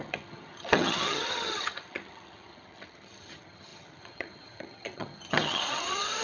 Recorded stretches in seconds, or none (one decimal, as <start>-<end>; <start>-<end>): none